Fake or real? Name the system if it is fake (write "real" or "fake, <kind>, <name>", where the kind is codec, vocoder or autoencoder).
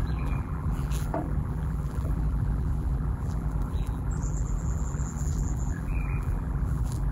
fake, vocoder, BigVGAN v2